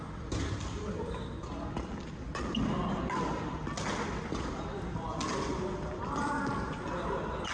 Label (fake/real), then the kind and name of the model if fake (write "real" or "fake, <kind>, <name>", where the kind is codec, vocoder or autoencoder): real